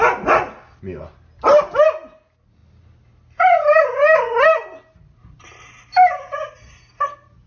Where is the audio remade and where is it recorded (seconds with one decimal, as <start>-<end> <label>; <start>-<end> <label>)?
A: 0.0-7.5 recorded